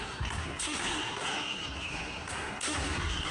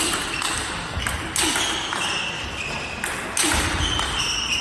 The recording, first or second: second